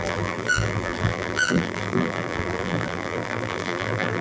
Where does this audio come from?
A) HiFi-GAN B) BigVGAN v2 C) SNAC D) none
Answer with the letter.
B